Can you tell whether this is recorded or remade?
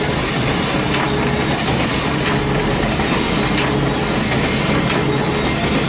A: recorded